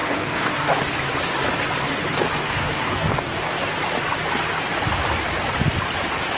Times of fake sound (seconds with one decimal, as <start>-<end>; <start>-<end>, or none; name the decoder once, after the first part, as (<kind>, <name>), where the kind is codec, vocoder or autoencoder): 0.0-0.8 (codec, DAC); 2.4-3.7